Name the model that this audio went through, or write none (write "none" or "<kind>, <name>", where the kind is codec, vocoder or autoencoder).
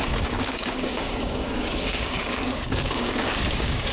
codec, DAC